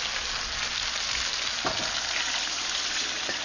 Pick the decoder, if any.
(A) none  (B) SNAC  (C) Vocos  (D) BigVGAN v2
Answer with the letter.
A